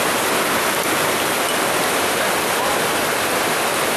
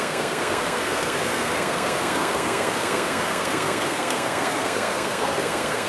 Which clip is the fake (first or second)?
second